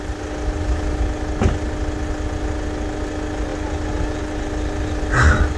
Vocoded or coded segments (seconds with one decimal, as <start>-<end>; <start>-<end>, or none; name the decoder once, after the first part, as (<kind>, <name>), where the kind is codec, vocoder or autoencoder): none